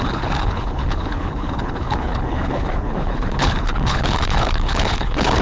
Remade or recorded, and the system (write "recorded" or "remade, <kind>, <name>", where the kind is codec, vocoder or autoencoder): remade, codec, HILCodec